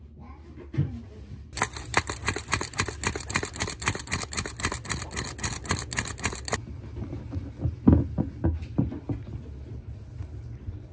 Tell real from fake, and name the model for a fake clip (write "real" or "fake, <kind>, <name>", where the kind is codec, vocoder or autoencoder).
real